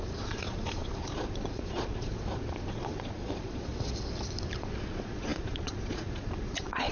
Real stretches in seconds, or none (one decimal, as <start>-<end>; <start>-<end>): 3.7-4.8